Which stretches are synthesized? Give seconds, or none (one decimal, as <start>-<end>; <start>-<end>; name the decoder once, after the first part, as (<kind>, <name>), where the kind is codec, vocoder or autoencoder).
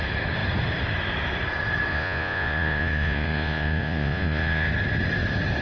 1.9-4.7 (vocoder, Vocos)